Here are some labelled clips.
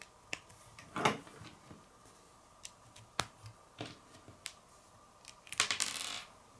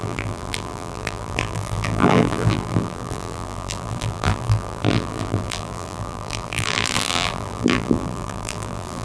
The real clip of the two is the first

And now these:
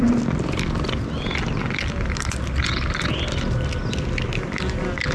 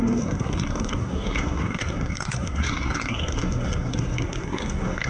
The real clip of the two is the first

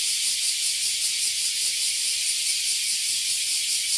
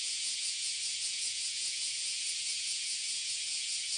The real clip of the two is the first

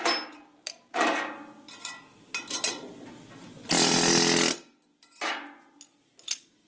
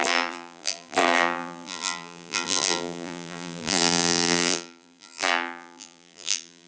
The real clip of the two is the first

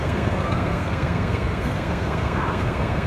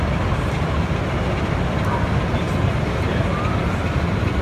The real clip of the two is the second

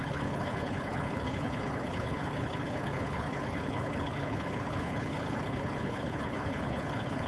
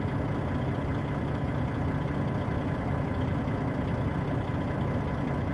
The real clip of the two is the second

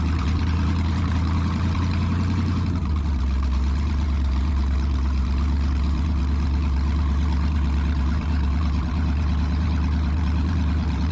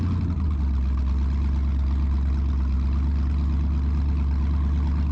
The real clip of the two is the second